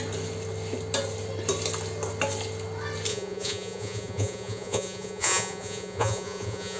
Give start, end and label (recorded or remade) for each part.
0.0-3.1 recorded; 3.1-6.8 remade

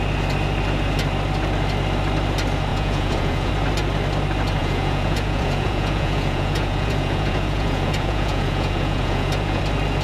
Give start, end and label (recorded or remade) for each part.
0.0-2.7 recorded; 2.7-3.5 remade; 3.5-4.6 recorded; 4.6-9.6 remade; 9.6-10.0 recorded